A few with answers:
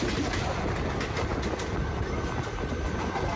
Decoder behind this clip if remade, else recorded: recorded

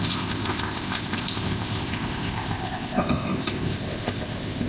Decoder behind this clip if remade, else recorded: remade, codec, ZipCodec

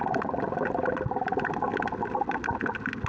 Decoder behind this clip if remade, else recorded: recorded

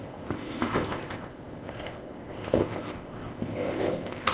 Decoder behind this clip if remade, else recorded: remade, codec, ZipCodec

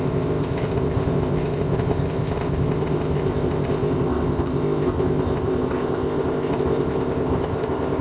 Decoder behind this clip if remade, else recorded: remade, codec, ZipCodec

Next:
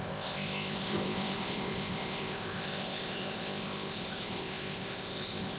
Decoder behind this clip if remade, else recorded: remade, codec, ZipCodec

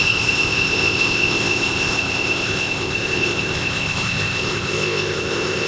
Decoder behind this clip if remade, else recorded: remade, codec, ZipCodec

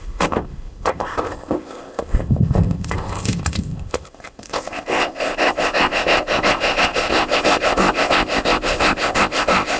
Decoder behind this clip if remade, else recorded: remade, codec, ZipCodec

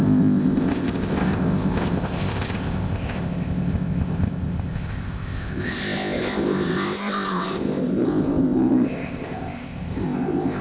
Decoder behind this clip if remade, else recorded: remade, codec, ZipCodec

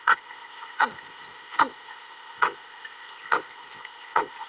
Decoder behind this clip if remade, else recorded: remade, codec, ZipCodec